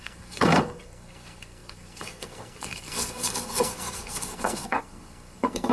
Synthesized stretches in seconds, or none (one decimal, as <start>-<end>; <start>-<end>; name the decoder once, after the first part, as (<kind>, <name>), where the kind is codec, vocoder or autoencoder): 0.0-5.7 (codec, SNAC)